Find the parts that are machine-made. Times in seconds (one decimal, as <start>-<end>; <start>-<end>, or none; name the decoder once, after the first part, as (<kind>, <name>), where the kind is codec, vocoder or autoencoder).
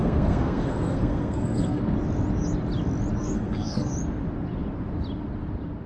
0.0-1.8 (codec, SNAC); 3.2-3.9